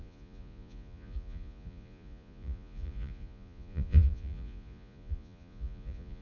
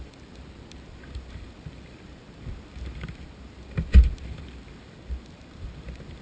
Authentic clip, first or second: second